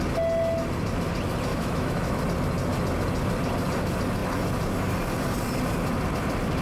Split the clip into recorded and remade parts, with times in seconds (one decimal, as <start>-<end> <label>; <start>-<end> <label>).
0.0-1.5 recorded; 1.5-2.2 remade; 2.2-6.6 recorded